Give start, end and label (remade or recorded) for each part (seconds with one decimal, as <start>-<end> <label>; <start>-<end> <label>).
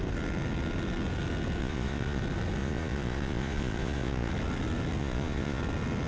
0.0-1.6 recorded; 1.6-2.2 remade; 2.2-2.6 recorded; 2.6-4.3 remade; 4.3-5.0 recorded; 5.0-5.6 remade; 5.6-6.1 recorded